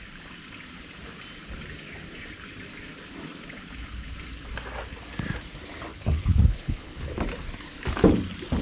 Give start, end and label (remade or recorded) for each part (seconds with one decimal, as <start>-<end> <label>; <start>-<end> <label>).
0.0-5.9 recorded; 5.9-7.1 remade; 7.1-8.6 recorded